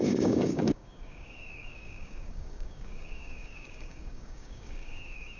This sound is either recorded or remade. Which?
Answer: remade